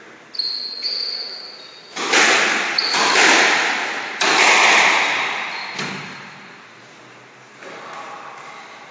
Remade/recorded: recorded